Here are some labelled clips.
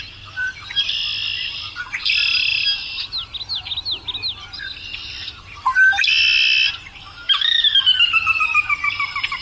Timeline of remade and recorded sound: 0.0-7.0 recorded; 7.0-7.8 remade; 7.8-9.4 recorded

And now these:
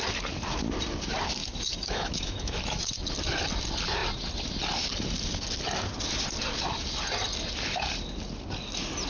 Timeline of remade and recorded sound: 0.0-1.4 recorded; 1.4-2.9 remade; 2.9-9.1 recorded

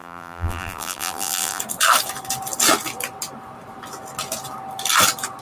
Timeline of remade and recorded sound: 0.0-1.6 remade; 1.6-5.4 recorded

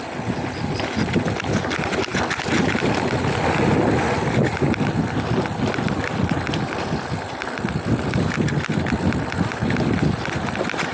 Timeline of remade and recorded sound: 0.0-10.9 recorded

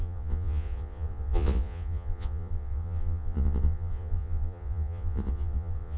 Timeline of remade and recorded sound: 0.0-6.0 remade